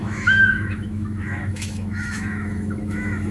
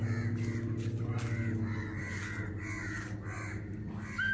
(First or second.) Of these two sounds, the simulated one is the first